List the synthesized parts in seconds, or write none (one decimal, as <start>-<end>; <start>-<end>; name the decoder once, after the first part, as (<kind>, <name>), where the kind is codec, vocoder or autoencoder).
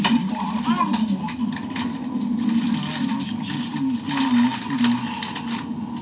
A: none